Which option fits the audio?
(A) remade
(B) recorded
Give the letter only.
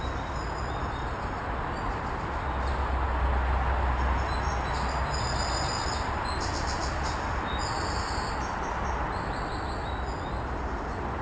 B